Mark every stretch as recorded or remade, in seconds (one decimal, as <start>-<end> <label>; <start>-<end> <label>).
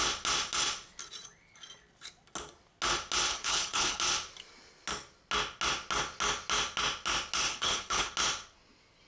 0.0-3.3 recorded; 3.3-4.0 remade; 4.0-7.5 recorded; 7.5-8.1 remade; 8.1-9.1 recorded